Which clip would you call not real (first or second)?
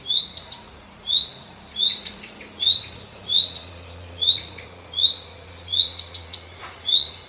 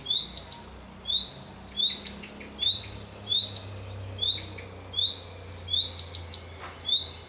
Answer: first